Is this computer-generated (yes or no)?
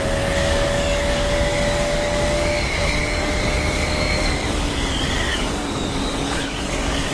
yes